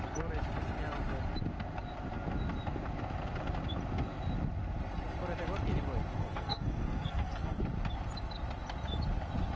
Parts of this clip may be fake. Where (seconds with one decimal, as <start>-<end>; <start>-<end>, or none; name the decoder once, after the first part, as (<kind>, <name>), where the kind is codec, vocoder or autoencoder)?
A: 6.2-7.6 (codec, SNAC)